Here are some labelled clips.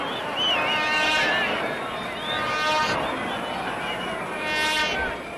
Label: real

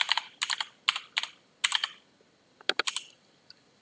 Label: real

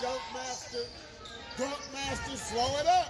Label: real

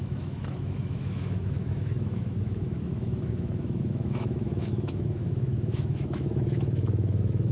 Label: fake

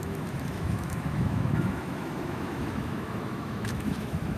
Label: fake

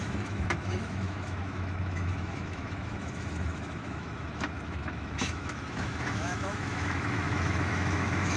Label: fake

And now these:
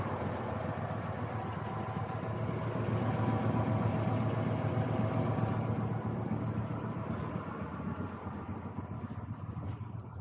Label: real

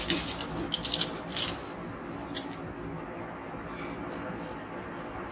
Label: real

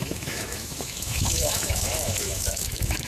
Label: fake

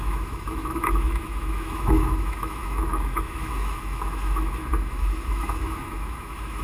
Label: fake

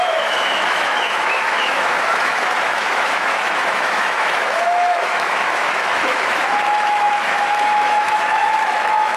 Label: fake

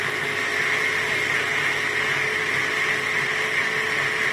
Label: real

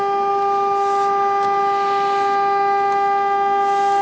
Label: real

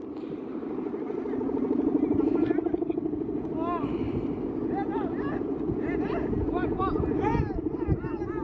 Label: real